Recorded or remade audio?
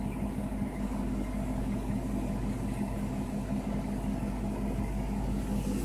remade